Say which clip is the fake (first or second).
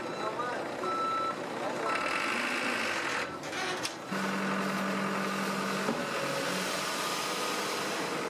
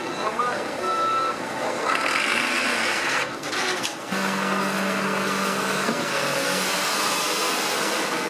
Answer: second